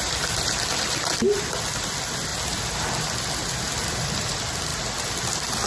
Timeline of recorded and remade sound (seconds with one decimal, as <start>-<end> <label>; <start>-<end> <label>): 0.0-1.2 remade; 1.2-1.8 recorded; 1.8-2.3 remade; 2.3-4.1 recorded; 4.1-5.7 remade